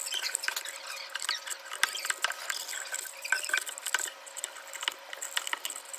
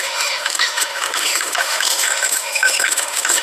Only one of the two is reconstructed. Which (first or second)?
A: second